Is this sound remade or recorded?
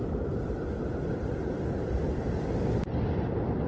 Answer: remade